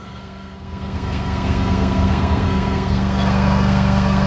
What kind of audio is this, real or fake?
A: fake